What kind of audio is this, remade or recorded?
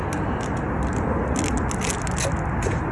recorded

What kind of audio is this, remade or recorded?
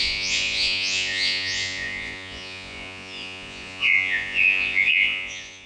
remade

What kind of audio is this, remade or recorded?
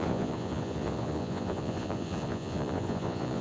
remade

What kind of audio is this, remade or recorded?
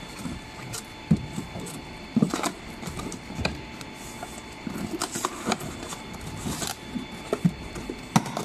recorded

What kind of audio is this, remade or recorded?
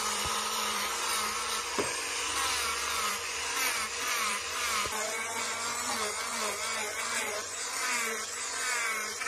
remade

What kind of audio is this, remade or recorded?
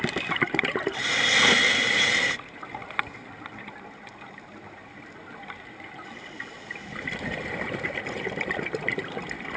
recorded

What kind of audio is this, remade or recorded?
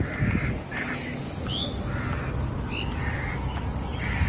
recorded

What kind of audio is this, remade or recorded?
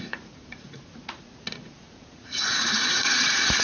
remade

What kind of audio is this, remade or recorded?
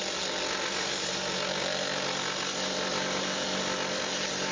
recorded